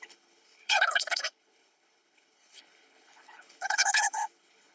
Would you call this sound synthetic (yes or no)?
yes